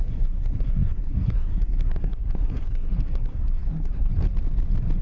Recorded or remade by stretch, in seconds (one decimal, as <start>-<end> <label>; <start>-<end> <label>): 0.0-4.1 remade; 4.1-5.0 recorded